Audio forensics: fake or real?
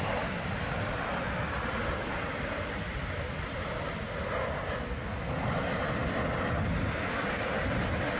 real